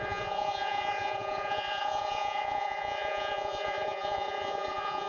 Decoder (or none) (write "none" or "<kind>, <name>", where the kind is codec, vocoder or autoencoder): vocoder, Vocos